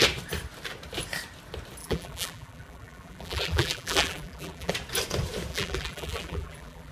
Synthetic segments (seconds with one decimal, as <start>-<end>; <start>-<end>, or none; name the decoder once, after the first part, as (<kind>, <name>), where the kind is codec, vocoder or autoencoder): 1.8-4.7 (vocoder, BigVGAN v2); 5.5-6.9